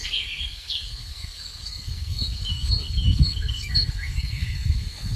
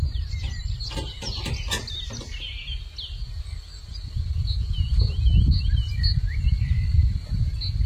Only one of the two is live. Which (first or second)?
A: second